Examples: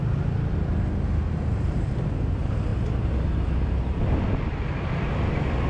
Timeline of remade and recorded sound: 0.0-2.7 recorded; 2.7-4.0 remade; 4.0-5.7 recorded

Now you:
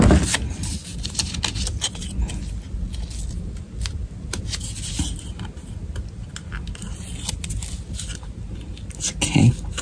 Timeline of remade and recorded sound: 0.0-0.9 recorded; 0.9-1.4 remade; 1.4-9.8 recorded

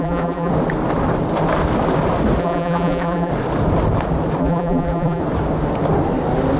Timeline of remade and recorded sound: 0.0-0.5 remade; 0.5-2.4 recorded; 2.4-3.3 remade; 3.3-4.4 recorded; 4.4-5.2 remade; 5.2-6.6 recorded

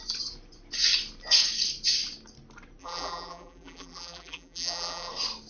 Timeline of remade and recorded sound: 0.0-2.8 recorded; 2.8-5.1 remade; 5.1-5.5 recorded

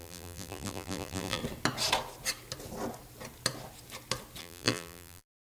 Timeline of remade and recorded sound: 0.0-1.4 remade; 1.4-4.4 recorded; 4.4-5.6 remade

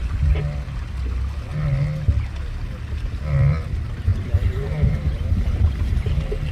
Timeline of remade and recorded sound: 0.0-4.1 recorded; 4.1-6.1 remade; 6.1-6.5 recorded